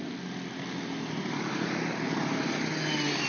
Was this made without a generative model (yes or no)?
yes